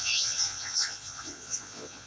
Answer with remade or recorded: remade